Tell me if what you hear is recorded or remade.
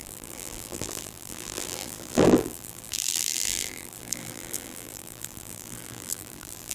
remade